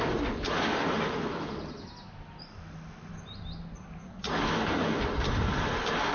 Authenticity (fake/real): real